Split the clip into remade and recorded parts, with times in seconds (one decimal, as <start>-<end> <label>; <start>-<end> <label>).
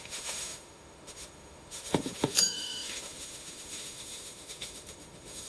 0.0-5.5 remade